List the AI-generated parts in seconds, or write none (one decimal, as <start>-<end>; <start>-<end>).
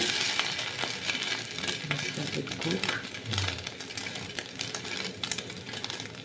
none